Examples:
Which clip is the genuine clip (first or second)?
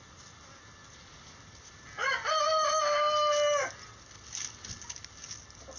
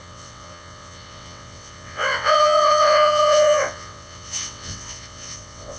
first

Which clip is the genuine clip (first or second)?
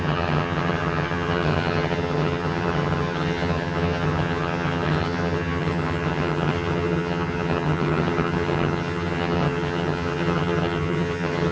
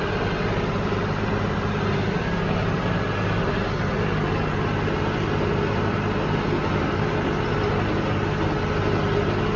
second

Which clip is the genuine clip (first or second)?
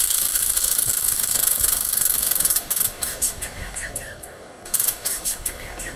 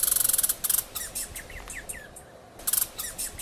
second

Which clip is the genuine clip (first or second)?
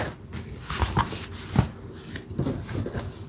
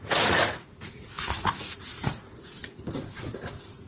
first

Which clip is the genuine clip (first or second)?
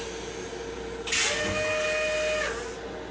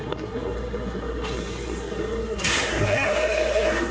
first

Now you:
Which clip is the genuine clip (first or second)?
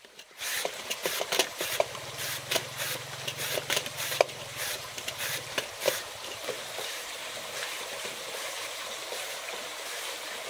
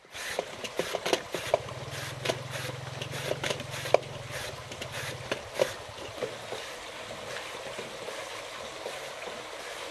second